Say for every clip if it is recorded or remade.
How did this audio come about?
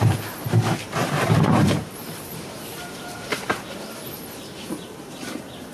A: remade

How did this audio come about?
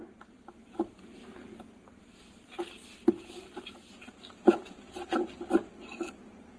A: recorded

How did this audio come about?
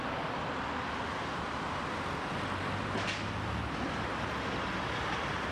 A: recorded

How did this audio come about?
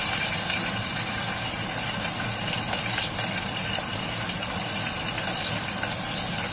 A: recorded